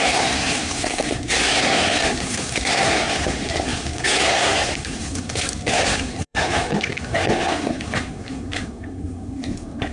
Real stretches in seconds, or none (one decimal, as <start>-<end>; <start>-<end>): none